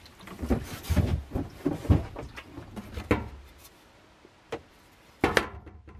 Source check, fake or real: real